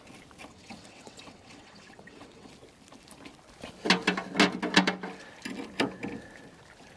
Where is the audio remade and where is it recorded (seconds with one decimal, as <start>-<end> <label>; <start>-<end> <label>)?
0.0-0.5 recorded; 0.5-2.5 remade; 2.5-7.0 recorded